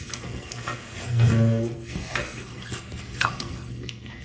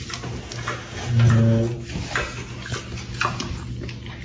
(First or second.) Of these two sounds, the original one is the second